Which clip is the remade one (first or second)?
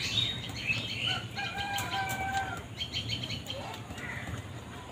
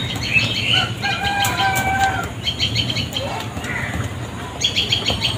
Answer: first